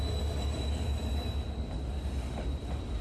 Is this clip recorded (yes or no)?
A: yes